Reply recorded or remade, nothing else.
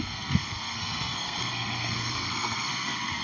remade